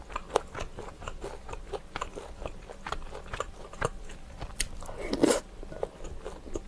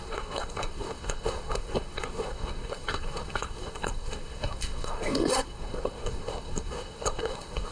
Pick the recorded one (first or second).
first